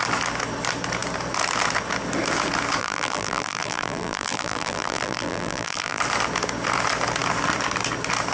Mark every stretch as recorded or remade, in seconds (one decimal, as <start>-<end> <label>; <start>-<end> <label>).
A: 0.0-2.8 recorded; 2.8-6.0 remade; 6.0-8.3 recorded